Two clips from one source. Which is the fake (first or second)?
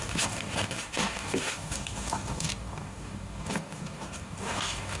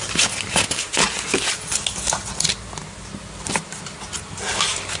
first